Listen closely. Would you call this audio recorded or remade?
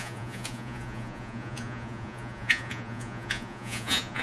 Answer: remade